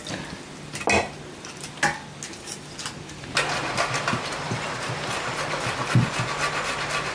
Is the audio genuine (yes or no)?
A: yes